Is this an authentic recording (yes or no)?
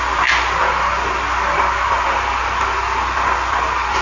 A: yes